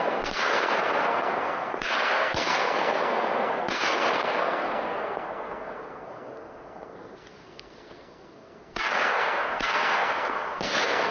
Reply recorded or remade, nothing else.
remade